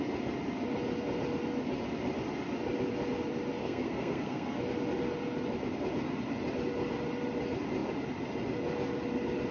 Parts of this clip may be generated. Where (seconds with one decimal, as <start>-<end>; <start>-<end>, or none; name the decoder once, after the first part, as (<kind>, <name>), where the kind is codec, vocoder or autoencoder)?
3.6-4.6 (codec, SNAC)